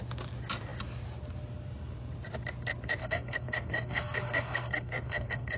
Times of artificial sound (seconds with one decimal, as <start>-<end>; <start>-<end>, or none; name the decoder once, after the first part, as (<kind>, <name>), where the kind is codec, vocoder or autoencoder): 3.0-5.6 (codec, SNAC)